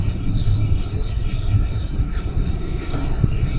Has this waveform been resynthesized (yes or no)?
yes